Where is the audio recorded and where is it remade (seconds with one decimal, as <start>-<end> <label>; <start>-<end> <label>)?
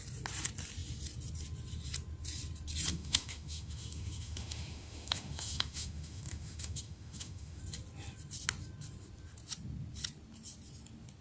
0.0-2.9 recorded; 2.9-7.6 remade; 7.6-11.2 recorded